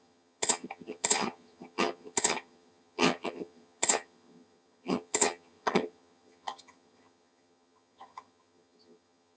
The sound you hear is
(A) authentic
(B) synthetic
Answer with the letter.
B